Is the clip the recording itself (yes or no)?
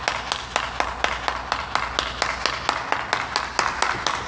yes